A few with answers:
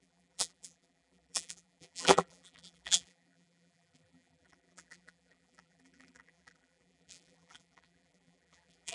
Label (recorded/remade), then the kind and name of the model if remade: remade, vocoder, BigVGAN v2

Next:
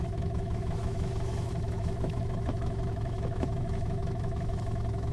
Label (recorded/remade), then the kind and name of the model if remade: remade, autoencoder, DAC-VAE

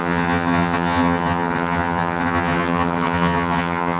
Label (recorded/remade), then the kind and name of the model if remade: remade, vocoder, HiFi-GAN